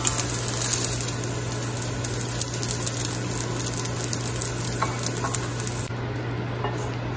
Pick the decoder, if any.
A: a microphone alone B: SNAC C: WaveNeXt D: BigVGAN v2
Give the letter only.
A